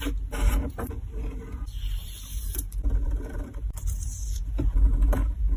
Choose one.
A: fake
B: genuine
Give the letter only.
A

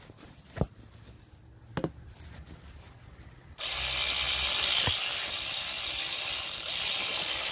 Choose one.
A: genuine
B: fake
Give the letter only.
A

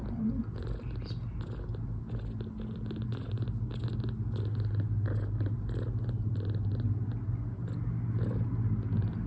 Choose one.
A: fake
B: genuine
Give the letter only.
B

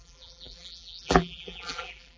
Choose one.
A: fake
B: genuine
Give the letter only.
A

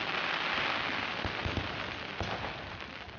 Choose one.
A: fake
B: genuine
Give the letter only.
A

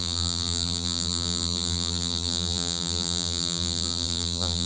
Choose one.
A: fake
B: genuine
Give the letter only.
A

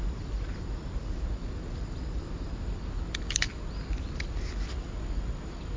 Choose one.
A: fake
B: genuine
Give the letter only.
B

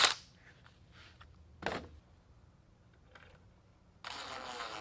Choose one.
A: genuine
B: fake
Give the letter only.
A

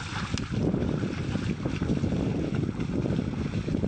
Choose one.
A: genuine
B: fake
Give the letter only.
A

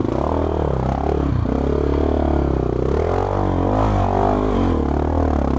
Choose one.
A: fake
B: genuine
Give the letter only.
B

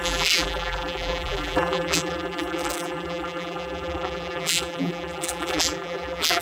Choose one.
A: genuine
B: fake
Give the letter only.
B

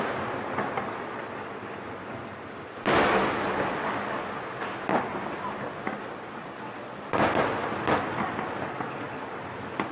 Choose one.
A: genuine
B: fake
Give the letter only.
A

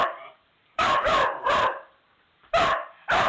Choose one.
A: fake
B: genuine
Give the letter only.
A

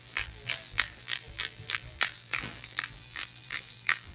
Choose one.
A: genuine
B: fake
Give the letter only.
B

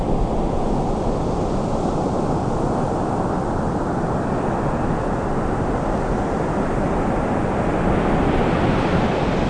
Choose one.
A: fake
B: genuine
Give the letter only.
B